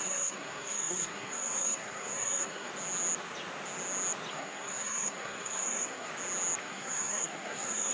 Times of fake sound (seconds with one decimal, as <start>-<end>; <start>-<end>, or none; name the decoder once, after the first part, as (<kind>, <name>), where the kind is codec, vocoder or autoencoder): 0.0-2.7 (codec, SNAC); 4.3-6.1; 6.6-7.9